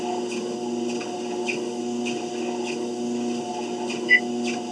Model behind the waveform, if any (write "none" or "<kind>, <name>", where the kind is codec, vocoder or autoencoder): none